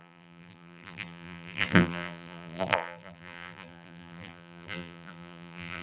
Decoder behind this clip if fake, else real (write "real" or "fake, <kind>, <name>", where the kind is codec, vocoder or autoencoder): fake, vocoder, BigVGAN v2